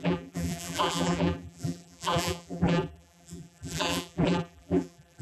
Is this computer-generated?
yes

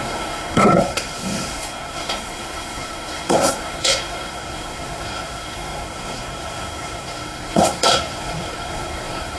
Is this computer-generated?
yes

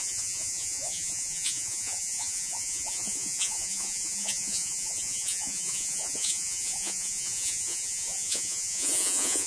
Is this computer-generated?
yes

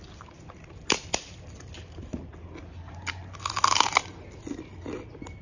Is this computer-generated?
no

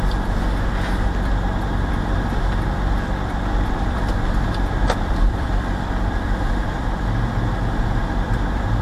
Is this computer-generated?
yes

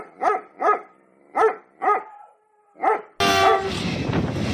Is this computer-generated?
no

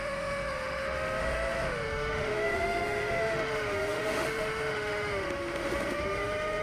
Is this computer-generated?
yes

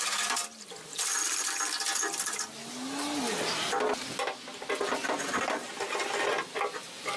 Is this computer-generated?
no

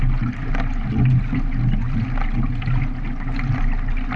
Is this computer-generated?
no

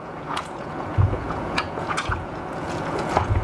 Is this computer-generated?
yes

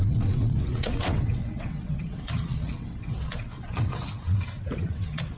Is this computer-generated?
yes